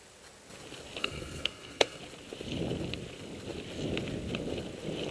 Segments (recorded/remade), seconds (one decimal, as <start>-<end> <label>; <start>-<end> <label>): 0.0-1.0 recorded; 1.0-2.0 remade; 2.0-5.1 recorded